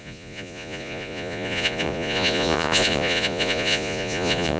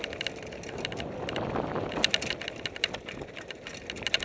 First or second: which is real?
second